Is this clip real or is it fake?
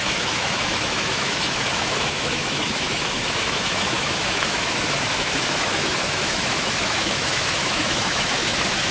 fake